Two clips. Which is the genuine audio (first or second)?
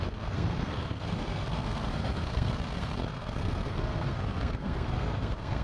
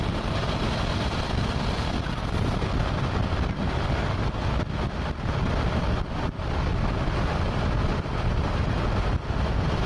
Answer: second